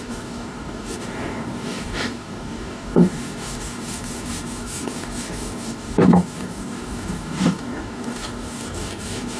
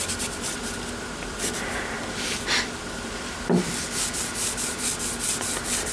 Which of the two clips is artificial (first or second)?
first